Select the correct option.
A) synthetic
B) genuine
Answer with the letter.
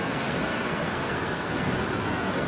A